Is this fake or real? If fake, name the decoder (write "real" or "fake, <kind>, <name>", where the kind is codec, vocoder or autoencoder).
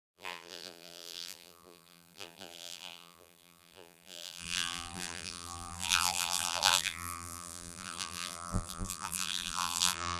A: fake, vocoder, BigVGAN v2